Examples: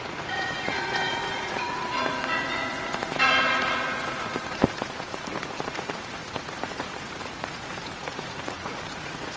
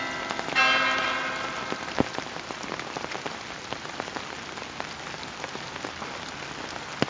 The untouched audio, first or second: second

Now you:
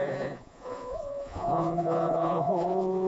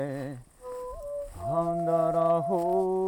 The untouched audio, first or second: second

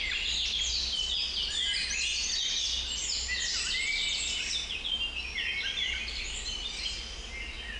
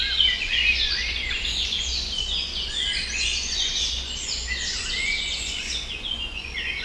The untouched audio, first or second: first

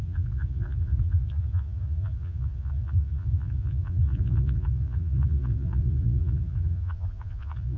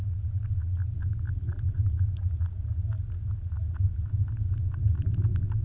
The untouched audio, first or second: second